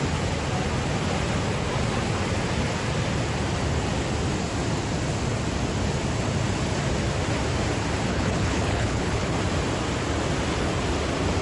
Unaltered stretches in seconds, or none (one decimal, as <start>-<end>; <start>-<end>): 0.0-8.1; 9.3-11.4